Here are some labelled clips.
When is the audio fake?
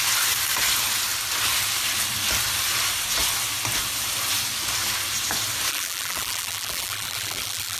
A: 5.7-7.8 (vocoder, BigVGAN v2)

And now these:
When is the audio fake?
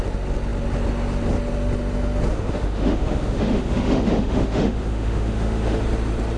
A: 2.3-5.8 (autoencoder, DAC-VAE)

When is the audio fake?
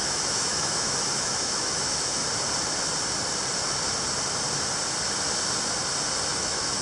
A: 0.0-2.2 (autoencoder, DAC-VAE); 6.3-6.8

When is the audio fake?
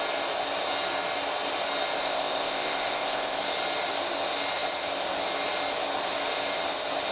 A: 2.0-3.4 (codec, ZipCodec)